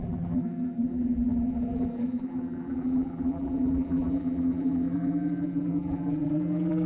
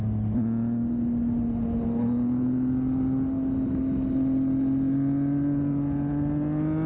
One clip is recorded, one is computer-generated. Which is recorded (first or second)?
second